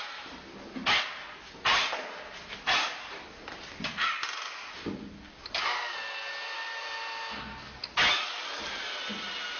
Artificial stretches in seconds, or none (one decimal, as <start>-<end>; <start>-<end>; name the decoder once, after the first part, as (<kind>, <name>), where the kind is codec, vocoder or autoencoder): none

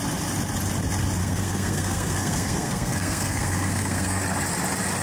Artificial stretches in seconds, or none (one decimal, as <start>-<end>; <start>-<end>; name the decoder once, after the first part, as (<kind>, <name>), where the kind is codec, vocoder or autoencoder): 1.2-4.2 (codec, SNAC)

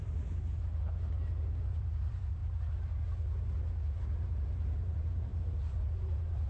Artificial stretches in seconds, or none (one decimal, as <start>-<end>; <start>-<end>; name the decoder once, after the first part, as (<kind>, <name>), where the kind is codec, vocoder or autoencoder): 0.0-0.5 (vocoder, BigVGAN v2); 1.7-2.4; 3.9-6.5

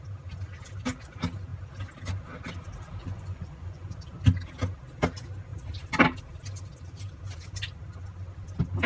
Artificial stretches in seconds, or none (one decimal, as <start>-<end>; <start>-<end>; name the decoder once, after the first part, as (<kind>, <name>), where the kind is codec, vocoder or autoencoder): 3.0-3.9 (vocoder, Vocos)

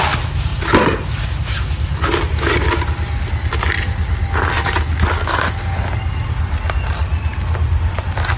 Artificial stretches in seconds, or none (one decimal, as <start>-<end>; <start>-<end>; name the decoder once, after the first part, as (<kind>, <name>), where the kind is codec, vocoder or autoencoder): none